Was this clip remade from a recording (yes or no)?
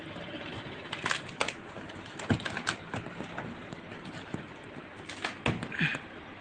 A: no